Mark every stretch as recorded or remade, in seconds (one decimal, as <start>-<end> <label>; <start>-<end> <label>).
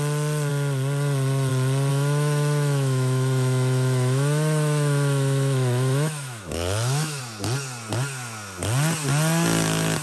0.0-1.9 recorded; 1.9-7.2 remade; 7.2-10.0 recorded